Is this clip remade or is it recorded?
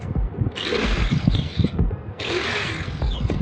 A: remade